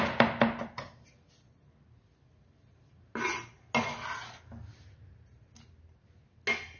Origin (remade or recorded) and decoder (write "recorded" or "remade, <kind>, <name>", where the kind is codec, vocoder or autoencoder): recorded